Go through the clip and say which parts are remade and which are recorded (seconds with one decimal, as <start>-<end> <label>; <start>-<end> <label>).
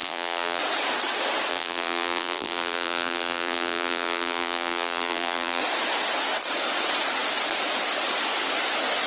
0.0-0.6 remade; 0.6-1.5 recorded; 1.5-5.6 remade; 5.6-9.1 recorded